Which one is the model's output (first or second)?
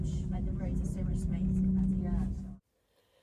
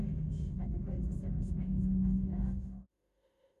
second